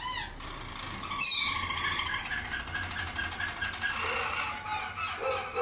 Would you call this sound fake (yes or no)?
no